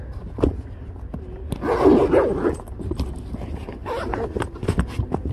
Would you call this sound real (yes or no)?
yes